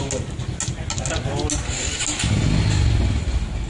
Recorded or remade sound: recorded